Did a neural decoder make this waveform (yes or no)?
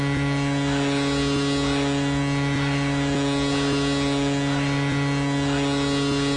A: no